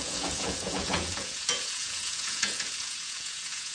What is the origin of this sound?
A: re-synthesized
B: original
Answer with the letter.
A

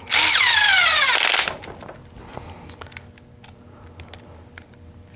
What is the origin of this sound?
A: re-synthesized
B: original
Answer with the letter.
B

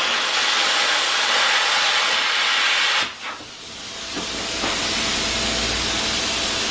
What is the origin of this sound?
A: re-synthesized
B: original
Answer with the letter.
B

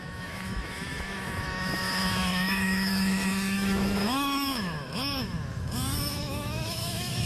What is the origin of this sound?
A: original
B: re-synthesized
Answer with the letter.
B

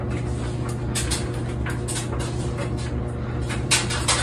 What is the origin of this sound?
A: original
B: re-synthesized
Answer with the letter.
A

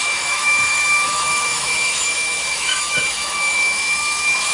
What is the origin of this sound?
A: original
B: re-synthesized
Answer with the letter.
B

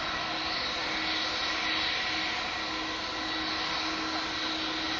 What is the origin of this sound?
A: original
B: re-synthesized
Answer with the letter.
A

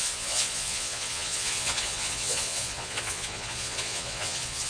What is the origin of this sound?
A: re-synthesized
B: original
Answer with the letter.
A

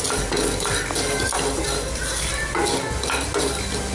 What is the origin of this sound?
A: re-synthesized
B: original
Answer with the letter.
B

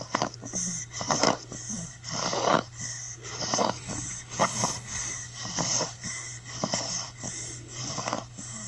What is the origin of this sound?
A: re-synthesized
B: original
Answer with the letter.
A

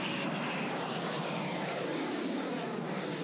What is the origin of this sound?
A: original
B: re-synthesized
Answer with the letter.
B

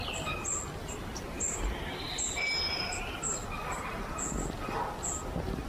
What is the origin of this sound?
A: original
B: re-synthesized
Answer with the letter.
A